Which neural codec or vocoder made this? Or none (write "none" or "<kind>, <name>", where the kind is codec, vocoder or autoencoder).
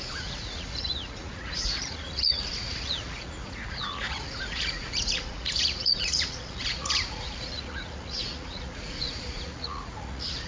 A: vocoder, Vocos